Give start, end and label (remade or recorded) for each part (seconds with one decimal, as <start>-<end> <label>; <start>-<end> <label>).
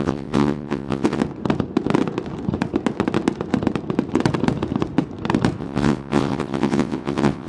0.0-1.2 remade; 1.2-5.6 recorded; 5.6-7.5 remade